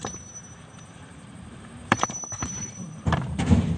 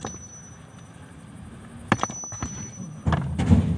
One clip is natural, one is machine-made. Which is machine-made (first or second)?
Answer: first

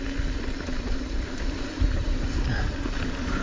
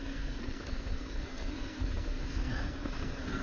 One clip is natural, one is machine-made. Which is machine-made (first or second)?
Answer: second